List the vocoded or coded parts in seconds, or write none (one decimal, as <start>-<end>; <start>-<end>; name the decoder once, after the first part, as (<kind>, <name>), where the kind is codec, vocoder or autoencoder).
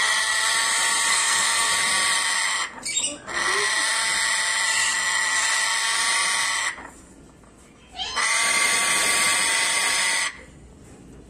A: 1.1-1.7 (codec, SNAC)